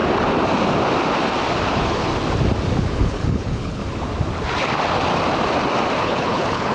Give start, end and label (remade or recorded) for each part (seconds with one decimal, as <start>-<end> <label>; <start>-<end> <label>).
0.0-1.7 recorded; 1.7-2.1 remade; 2.1-2.8 recorded; 2.8-3.8 remade; 3.8-6.0 recorded; 6.0-6.7 remade